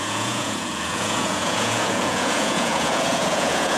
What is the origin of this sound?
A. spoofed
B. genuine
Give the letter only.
A